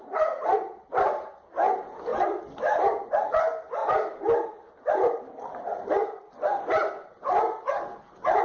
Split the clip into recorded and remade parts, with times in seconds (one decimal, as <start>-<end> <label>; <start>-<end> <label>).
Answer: 0.0-8.4 recorded